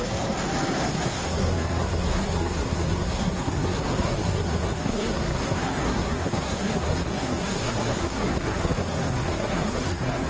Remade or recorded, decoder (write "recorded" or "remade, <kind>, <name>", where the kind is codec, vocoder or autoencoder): remade, codec, SNAC